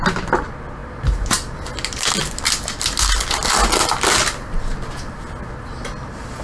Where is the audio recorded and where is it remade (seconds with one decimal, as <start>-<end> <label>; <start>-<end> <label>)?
0.0-6.4 recorded